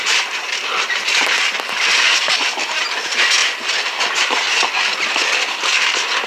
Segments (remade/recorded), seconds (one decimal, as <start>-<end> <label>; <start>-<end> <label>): 0.0-6.3 remade